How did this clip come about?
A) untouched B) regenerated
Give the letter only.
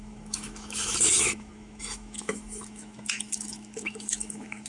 B